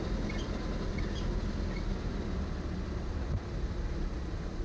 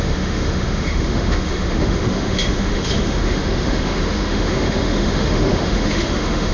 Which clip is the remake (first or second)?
second